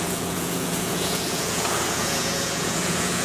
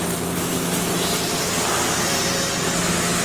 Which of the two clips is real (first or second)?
second